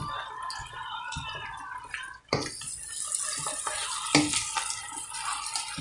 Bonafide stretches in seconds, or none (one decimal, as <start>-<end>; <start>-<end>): 0.0-5.8